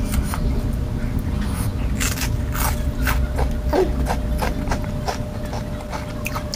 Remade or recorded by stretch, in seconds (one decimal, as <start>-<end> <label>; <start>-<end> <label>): 0.0-6.6 recorded

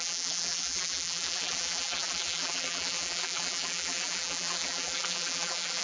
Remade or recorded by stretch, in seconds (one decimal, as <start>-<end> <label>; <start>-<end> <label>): 0.0-5.8 remade

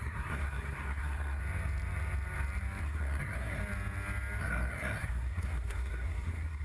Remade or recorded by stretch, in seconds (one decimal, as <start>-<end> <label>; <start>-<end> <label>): 0.0-1.4 remade; 1.4-2.8 recorded; 2.8-3.6 remade; 3.6-4.4 recorded; 4.4-6.6 remade

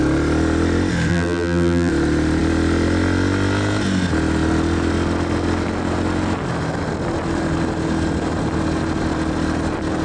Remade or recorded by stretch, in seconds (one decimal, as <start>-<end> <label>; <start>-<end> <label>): 0.0-1.1 recorded; 1.1-1.9 remade; 1.9-10.0 recorded

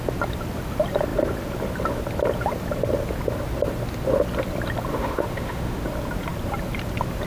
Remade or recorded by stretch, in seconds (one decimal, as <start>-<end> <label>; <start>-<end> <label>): 0.0-4.9 recorded; 4.9-5.8 remade; 5.8-7.3 recorded

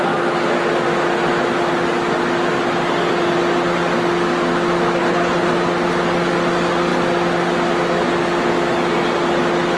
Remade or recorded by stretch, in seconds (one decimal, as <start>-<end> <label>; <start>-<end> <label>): 0.0-5.0 recorded; 5.0-5.5 remade; 5.5-9.8 recorded